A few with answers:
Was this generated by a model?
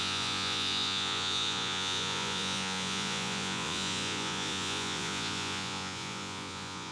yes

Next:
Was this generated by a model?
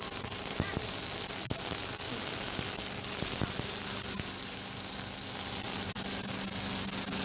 no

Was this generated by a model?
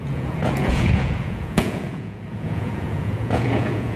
yes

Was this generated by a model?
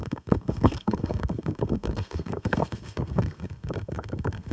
yes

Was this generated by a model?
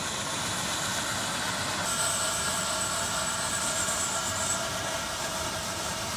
no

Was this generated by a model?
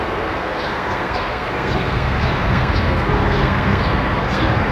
yes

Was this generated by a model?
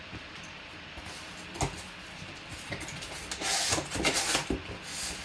no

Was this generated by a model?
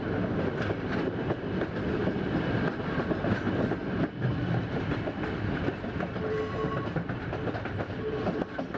no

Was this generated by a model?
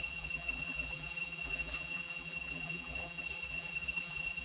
yes